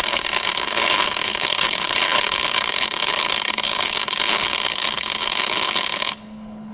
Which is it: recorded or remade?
remade